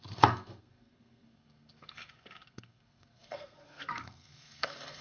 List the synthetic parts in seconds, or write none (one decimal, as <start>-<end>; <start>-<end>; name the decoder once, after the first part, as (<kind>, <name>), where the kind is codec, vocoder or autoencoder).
0.0-5.0 (codec, SNAC)